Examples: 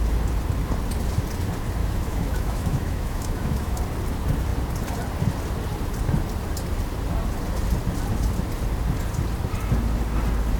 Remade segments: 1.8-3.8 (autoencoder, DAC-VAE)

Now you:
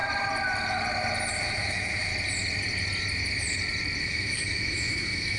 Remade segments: 1.4-2.1 (autoencoder, DAC-VAE); 4.0-5.4

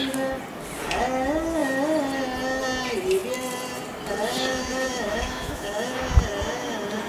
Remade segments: 4.5-6.0 (autoencoder, DAC-VAE)